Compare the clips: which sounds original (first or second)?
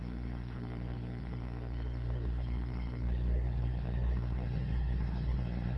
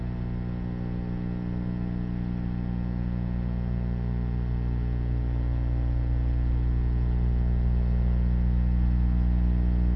second